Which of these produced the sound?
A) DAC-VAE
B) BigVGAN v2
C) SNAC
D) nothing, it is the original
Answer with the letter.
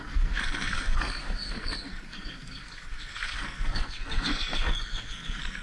C